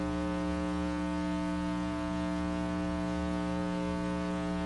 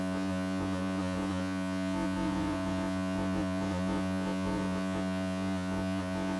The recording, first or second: first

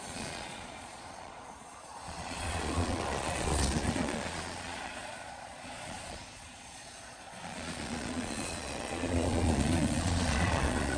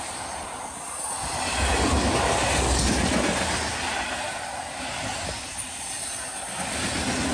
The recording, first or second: second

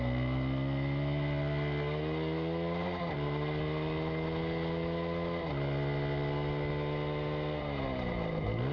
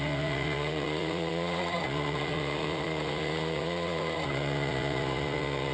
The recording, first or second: first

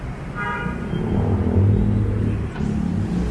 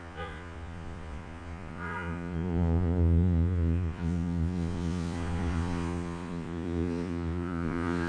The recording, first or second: first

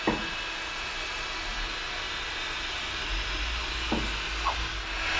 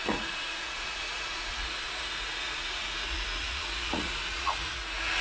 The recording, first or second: first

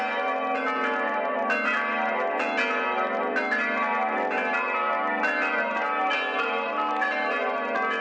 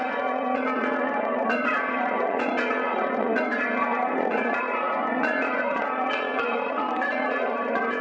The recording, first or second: first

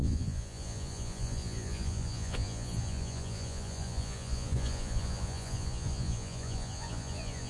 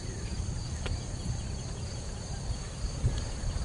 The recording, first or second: second